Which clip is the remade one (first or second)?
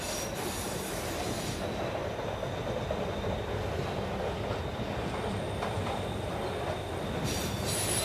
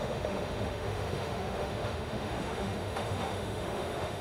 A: second